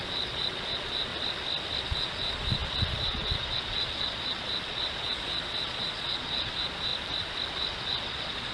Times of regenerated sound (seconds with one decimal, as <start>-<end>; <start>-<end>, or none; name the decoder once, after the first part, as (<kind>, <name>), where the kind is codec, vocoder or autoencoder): 0.0-1.1 (vocoder, Vocos); 1.8-6.9; 7.5-8.5

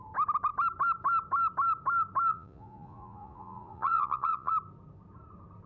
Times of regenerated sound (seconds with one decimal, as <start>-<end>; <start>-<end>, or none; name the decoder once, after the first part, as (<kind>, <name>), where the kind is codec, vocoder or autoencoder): 2.3-4.5 (vocoder, Vocos)

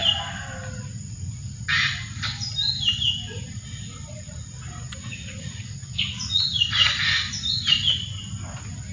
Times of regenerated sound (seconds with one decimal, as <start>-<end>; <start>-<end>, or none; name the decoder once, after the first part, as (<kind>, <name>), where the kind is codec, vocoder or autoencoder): 5.0-6.9 (vocoder, Vocos)